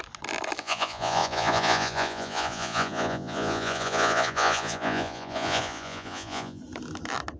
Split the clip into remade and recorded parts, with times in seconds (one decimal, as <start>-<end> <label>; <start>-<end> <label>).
0.0-0.6 recorded; 0.6-6.6 remade; 6.6-7.4 recorded